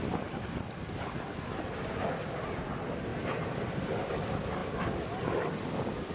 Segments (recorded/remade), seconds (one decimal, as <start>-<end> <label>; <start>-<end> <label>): 0.0-6.1 recorded

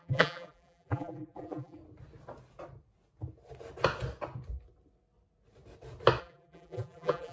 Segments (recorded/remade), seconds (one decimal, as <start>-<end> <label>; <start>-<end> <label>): 0.0-1.8 remade; 1.8-6.2 recorded; 6.2-7.3 remade

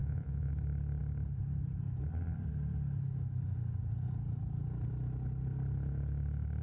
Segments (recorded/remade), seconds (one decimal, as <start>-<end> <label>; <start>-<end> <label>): 0.0-0.5 remade; 0.5-6.6 recorded

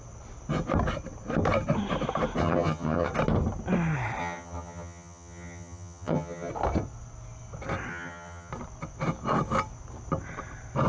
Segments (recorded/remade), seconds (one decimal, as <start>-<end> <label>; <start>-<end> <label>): 0.0-2.4 recorded; 2.4-3.1 remade; 3.1-4.2 recorded; 4.2-6.5 remade; 6.5-7.9 recorded; 7.9-8.5 remade; 8.5-10.9 recorded

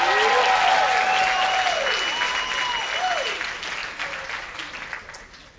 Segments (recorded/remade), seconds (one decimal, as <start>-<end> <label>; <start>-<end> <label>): 0.0-5.6 recorded